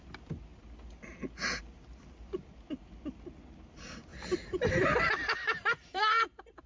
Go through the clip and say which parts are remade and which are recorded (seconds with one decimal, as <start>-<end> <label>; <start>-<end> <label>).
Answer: 0.0-4.1 recorded; 4.1-6.7 remade